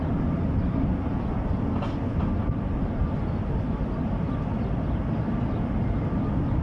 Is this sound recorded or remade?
recorded